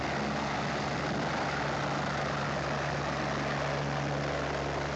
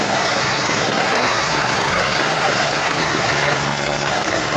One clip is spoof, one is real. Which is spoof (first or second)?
second